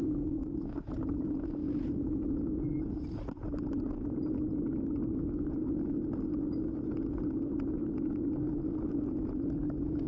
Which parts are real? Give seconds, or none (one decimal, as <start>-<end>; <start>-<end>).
0.9-10.1